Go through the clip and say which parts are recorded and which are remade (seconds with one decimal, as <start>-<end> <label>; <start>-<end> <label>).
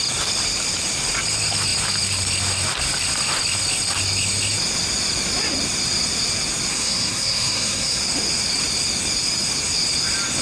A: 0.0-6.7 recorded; 6.7-8.0 remade; 8.0-10.4 recorded